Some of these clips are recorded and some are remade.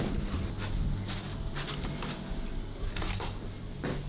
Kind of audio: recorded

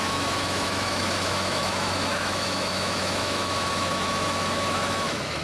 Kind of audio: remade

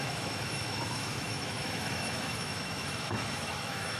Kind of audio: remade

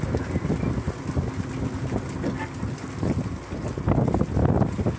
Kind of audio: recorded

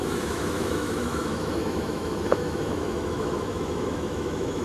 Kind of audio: remade